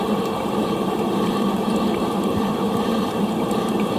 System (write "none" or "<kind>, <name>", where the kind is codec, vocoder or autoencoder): vocoder, BigVGAN v2